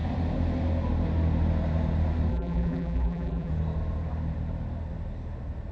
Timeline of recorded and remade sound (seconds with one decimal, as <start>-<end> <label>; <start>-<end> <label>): 0.0-2.3 recorded; 2.3-3.5 remade; 3.5-5.7 recorded